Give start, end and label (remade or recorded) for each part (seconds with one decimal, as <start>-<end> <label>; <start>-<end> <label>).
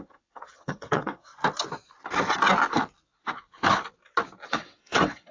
0.0-1.3 remade; 1.3-4.5 recorded; 4.5-5.3 remade